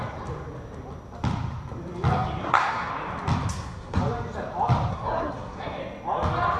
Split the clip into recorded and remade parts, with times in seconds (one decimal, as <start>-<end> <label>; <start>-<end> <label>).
0.0-2.4 recorded; 2.4-2.9 remade; 2.9-3.5 recorded; 3.5-4.0 remade; 4.0-4.9 recorded; 4.9-5.8 remade; 5.8-6.6 recorded